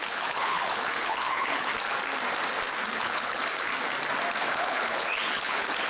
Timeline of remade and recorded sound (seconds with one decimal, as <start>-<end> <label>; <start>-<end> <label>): 0.0-1.7 remade; 1.7-2.9 recorded; 2.9-3.7 remade; 3.7-4.4 recorded; 4.4-5.9 remade